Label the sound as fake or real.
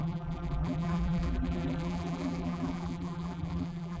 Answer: fake